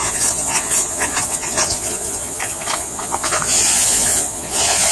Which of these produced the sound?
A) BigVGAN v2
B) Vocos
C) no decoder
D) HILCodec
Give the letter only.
B